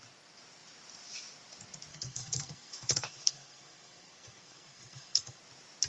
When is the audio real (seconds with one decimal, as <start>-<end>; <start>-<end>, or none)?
0.0-1.9; 5.4-5.9